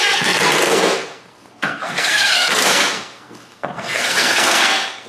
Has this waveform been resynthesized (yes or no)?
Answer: yes